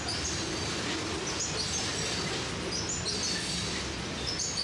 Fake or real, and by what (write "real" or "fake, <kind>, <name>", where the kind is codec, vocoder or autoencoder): real